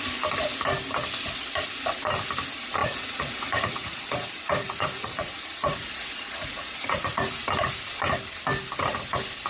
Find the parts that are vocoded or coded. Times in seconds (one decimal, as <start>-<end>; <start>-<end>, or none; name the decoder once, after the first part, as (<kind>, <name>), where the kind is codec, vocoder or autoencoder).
2.8-7.4 (vocoder, Vocos)